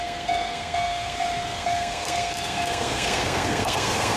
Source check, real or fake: fake